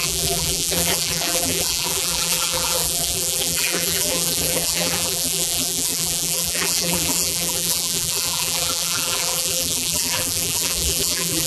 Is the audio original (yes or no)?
no